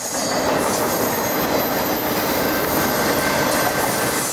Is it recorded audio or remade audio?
recorded